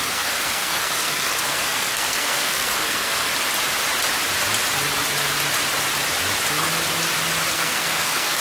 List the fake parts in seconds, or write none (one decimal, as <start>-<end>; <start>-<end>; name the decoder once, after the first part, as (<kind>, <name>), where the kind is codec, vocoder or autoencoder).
0.0-3.3 (codec, SNAC); 7.5-8.4